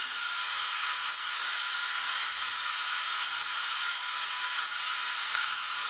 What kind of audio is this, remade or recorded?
remade